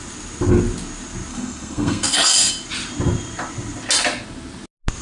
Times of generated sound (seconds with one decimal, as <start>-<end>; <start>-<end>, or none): 1.3-2.5